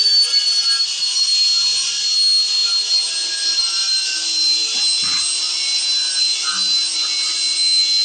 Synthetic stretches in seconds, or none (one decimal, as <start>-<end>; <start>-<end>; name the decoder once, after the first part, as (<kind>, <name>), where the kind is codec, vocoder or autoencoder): none